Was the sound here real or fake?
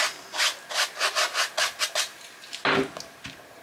real